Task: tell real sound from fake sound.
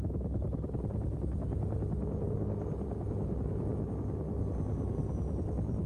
real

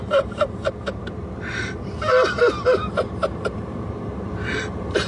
fake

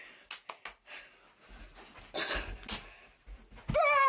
real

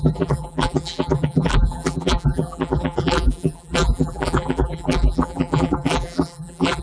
fake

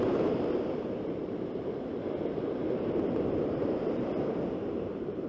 fake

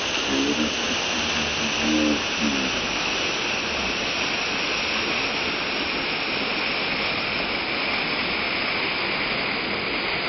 real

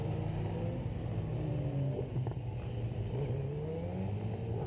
real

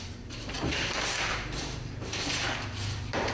fake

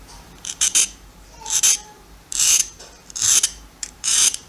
fake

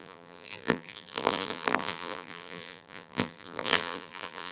fake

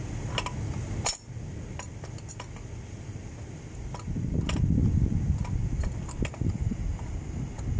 real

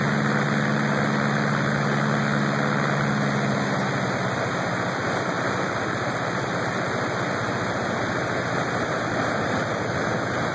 real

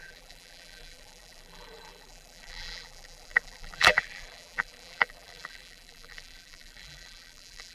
fake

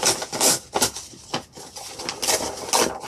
real